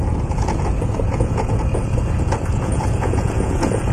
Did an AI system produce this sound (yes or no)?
yes